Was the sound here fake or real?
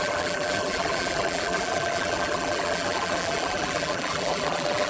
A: fake